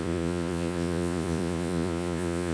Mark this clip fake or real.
fake